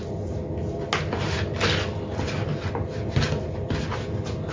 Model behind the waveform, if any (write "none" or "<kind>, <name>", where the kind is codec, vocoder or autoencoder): none